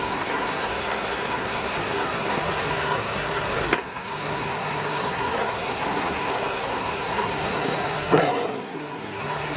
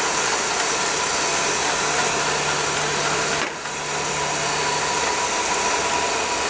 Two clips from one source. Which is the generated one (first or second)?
first